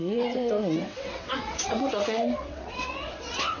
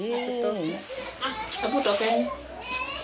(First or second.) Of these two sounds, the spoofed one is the first